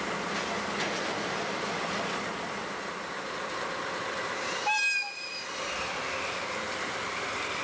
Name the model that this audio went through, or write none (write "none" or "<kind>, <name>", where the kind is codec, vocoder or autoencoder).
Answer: none